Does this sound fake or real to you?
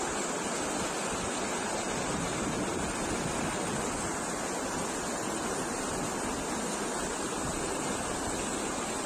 real